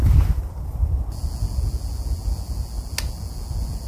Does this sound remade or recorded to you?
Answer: recorded